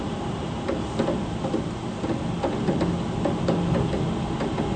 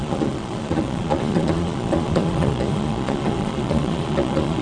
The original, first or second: first